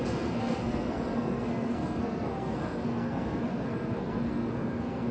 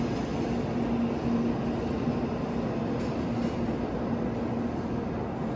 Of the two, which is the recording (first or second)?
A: second